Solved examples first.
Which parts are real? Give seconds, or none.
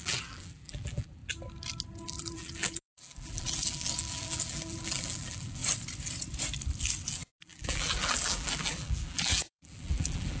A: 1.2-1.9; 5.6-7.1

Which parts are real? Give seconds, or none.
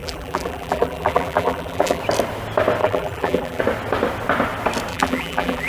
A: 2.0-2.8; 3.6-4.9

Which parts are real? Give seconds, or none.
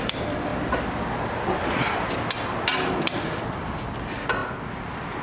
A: 0.5-2.9